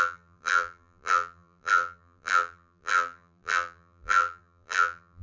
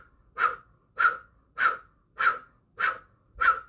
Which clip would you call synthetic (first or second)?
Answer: first